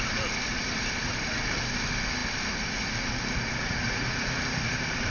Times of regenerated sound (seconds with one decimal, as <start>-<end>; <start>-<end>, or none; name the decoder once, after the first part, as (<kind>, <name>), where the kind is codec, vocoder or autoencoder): 3.6-4.3 (vocoder, Vocos)

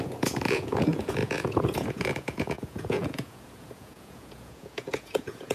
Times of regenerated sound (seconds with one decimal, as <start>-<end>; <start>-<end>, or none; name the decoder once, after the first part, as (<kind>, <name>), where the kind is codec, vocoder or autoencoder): 0.0-5.5 (vocoder, Vocos)

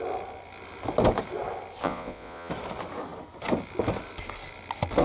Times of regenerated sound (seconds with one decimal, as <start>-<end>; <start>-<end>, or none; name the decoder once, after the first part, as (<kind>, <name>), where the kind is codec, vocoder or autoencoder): 1.8-2.5 (vocoder, Vocos)

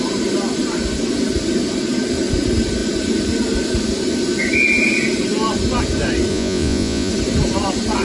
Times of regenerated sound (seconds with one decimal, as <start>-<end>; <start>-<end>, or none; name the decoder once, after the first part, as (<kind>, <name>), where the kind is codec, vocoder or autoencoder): 6.3-7.1 (vocoder, Vocos)

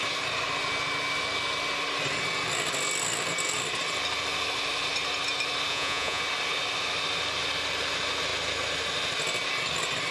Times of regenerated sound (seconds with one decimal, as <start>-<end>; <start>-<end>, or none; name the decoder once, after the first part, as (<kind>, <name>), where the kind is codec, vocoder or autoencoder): 5.7-6.2 (vocoder, Vocos)